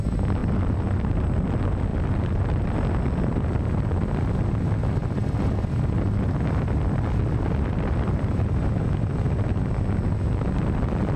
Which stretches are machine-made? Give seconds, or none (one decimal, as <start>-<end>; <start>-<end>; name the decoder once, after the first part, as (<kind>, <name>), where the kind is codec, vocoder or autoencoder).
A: 0.4-1.3 (vocoder, BigVGAN v2); 1.9-2.9; 5.0-8.8